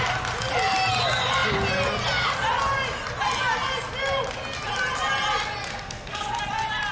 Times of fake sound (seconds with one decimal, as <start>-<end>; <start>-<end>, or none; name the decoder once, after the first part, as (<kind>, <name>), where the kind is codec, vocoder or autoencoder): 5.7-6.4 (codec, SNAC)